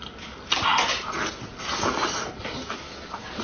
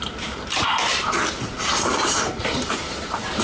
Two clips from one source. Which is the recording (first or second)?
first